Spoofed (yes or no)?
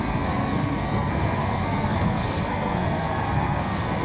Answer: yes